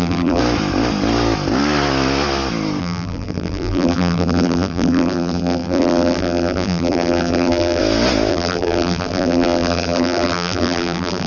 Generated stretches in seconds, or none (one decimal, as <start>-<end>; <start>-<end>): 0.0-0.4; 2.8-7.8; 8.3-11.3